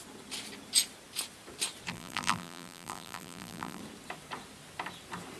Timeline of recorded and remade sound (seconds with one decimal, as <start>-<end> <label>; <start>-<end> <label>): 0.0-1.9 recorded; 1.9-3.8 remade; 3.8-5.4 recorded